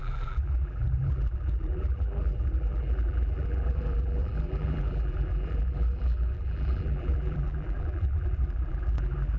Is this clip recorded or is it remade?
remade